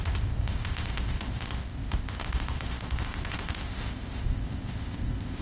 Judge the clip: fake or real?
fake